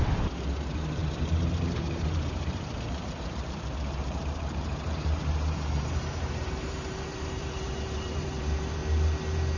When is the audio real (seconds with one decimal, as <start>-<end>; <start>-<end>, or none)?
8.8-9.6